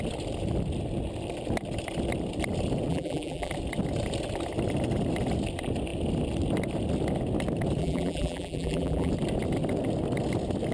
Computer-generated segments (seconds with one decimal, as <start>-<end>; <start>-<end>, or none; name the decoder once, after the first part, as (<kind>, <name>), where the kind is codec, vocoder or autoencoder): 2.9-3.5 (vocoder, BigVGAN v2); 7.8-9.1